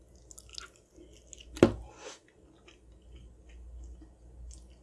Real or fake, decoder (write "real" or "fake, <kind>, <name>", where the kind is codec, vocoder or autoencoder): real